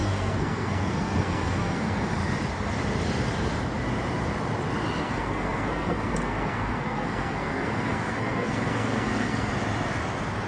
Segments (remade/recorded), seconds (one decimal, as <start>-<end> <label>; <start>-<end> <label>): 0.0-2.2 remade; 2.2-5.0 recorded; 5.0-9.5 remade; 9.5-10.5 recorded